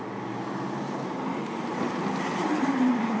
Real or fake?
real